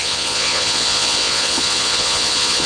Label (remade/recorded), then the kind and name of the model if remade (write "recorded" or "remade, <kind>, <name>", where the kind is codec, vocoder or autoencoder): remade, vocoder, Vocos